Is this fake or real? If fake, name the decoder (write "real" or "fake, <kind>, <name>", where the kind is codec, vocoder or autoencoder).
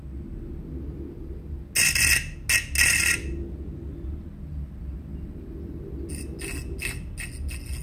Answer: real